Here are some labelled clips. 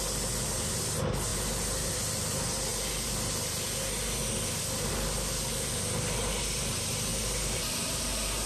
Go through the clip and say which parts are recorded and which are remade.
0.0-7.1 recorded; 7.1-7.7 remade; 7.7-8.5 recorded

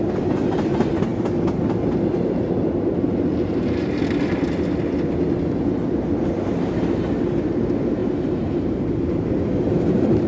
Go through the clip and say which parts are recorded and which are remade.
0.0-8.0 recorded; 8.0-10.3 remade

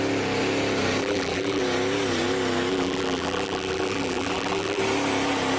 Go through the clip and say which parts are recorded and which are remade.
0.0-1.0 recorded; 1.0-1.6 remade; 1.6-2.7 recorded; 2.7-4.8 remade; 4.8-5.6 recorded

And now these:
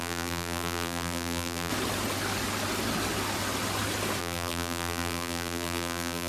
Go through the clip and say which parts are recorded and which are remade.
0.0-1.7 remade; 1.7-4.2 recorded; 4.2-6.3 remade

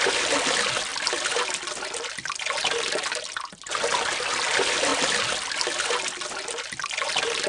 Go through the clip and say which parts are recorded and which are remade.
0.0-0.9 remade; 0.9-4.1 recorded; 4.1-4.9 remade; 4.9-6.9 recorded; 6.9-7.5 remade